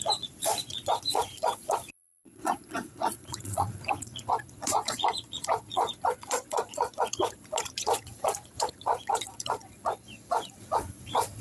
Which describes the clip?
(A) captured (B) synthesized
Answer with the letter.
B